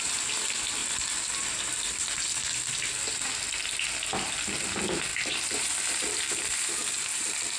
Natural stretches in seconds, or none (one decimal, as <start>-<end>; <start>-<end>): 0.0-7.6

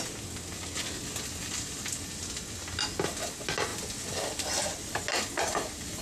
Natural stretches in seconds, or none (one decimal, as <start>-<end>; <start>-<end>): 0.0-6.0

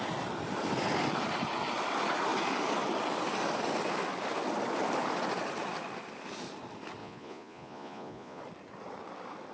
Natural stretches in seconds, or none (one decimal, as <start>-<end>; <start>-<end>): 0.0-7.0; 8.4-9.5

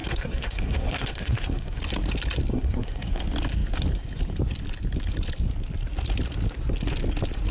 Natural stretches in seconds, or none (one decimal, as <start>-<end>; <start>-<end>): 1.8-2.5; 3.2-7.5

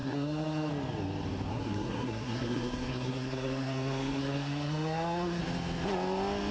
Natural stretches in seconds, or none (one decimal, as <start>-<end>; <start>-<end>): 0.7-1.5; 5.4-6.5

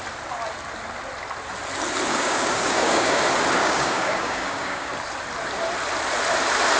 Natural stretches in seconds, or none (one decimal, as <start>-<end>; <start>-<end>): 0.0-2.1; 3.2-3.6; 4.9-6.8

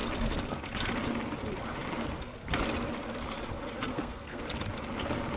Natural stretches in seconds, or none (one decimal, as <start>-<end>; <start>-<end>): 0.0-3.9; 4.4-5.4

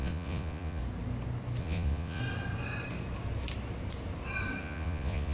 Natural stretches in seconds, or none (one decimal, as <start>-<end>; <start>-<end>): 0.8-1.6; 2.2-4.6